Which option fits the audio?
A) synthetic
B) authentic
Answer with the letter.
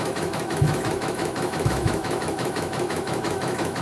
A